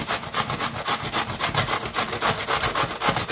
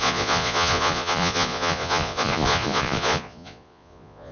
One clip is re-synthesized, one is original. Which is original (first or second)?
first